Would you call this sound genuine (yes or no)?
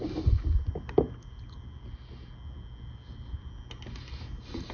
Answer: yes